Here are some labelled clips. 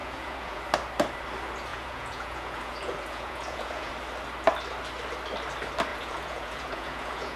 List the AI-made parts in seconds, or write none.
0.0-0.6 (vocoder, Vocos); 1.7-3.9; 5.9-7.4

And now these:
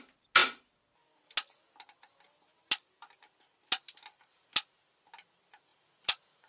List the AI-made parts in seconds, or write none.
5.7-6.5 (vocoder, Vocos)

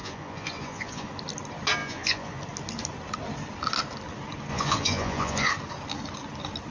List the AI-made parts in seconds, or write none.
0.0-1.1 (vocoder, Vocos); 1.8-2.4; 4.5-5.5

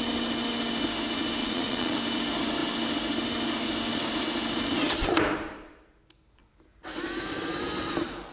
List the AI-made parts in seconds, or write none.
1.4-2.0 (vocoder, Vocos)